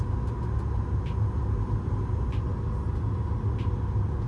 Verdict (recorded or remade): recorded